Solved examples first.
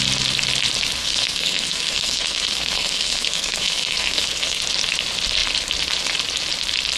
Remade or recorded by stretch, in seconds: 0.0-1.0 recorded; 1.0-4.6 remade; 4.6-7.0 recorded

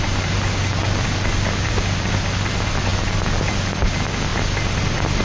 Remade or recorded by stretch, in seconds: 0.0-5.2 recorded

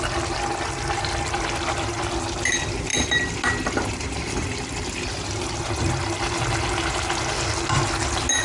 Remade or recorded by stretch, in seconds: 0.0-8.4 recorded

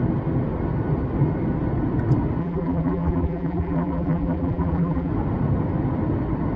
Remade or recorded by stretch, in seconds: 0.0-2.4 recorded; 2.4-5.1 remade; 5.1-6.6 recorded

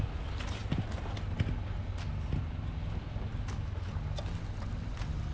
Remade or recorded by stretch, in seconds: 0.0-5.3 recorded